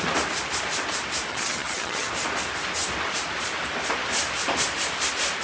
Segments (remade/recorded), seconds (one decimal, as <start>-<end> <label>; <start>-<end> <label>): 0.0-1.3 recorded; 1.3-2.1 remade; 2.1-5.4 recorded

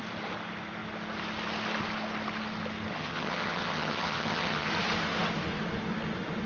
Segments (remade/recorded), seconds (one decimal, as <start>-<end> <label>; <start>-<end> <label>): 0.0-2.9 recorded; 2.9-4.7 remade; 4.7-6.5 recorded

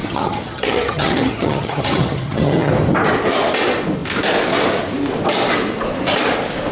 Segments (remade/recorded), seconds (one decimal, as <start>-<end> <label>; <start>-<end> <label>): 0.0-2.7 remade; 2.7-6.7 recorded

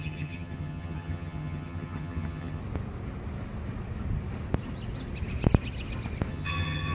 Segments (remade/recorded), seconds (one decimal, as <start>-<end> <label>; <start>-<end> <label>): 0.0-2.6 remade; 2.6-6.3 recorded; 6.3-6.9 remade

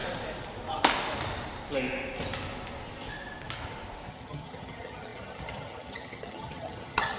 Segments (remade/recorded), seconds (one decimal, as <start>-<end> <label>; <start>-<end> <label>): 0.0-4.1 recorded; 4.1-7.2 remade

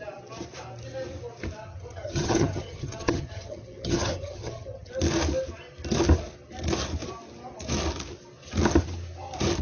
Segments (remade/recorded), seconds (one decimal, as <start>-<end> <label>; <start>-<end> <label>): 0.0-1.6 recorded; 1.6-4.9 remade; 4.9-9.6 recorded

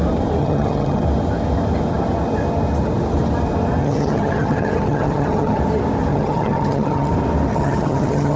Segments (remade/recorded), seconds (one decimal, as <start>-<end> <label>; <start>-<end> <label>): 0.0-0.4 recorded; 0.4-1.0 remade; 1.0-3.8 recorded; 3.8-5.6 remade; 5.6-6.1 recorded; 6.1-7.1 remade; 7.1-7.5 recorded; 7.5-8.4 remade